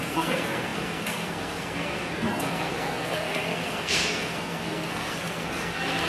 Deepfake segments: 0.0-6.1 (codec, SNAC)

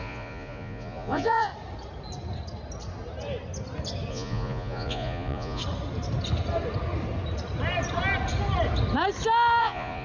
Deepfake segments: 0.0-1.5 (vocoder, Vocos); 4.1-5.6; 9.6-10.0

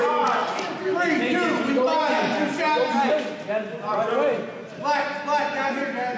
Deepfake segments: none

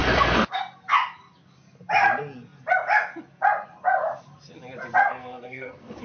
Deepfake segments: 0.0-0.6 (codec, SNAC); 5.0-6.0